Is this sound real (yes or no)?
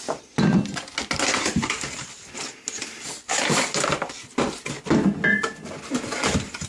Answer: yes